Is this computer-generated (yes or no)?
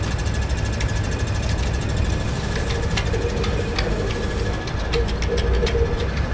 no